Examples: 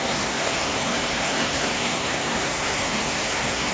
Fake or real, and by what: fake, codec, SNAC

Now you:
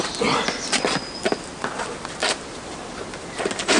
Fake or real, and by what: real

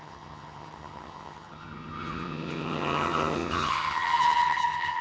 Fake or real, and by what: fake, vocoder, HiFi-GAN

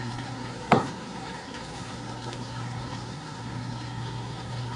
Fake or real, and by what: fake, codec, SNAC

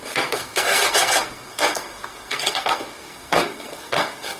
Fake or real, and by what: fake, codec, SNAC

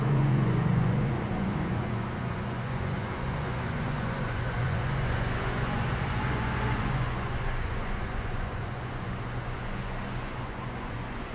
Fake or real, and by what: fake, vocoder, Vocos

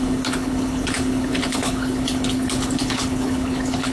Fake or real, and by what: fake, codec, HILCodec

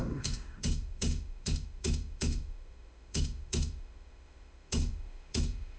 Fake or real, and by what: fake, autoencoder, DAC-VAE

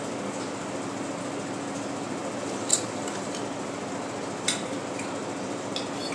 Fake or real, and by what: real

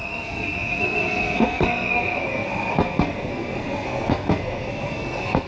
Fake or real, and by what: fake, codec, SNAC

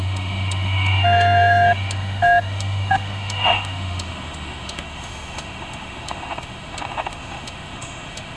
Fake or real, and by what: fake, autoencoder, DAC-VAE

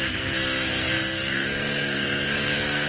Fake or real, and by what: fake, codec, SNAC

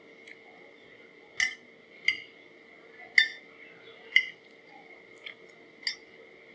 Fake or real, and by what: real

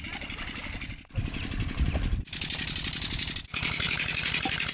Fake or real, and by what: real